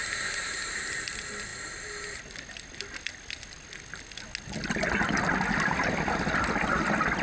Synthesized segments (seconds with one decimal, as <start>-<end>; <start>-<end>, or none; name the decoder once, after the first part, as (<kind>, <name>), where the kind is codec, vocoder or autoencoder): 0.0-0.9 (vocoder, BigVGAN v2)